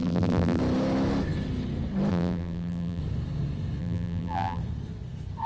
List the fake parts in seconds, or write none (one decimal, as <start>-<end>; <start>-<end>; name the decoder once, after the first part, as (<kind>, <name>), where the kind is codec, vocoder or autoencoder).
0.0-0.6 (vocoder, BigVGAN v2); 2.1-3.0; 3.8-4.6